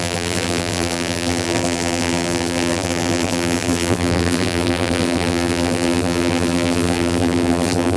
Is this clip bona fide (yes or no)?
no